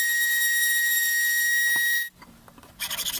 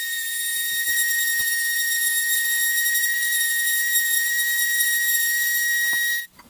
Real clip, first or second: first